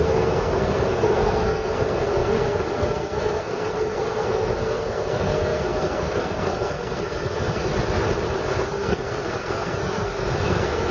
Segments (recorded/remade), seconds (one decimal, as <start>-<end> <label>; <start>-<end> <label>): 0.0-7.7 remade; 7.7-8.5 recorded; 8.5-10.9 remade